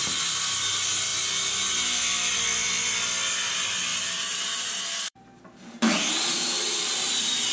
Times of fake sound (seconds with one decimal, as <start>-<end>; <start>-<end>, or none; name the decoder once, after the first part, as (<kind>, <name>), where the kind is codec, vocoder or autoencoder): 3.9-6.1 (vocoder, BigVGAN v2)